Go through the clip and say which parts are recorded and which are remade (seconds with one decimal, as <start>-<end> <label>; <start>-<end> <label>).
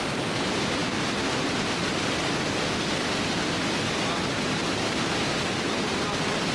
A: 0.0-6.5 recorded